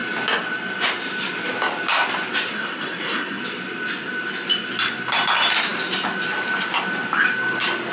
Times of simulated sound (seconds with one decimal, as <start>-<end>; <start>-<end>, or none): 2.5-3.4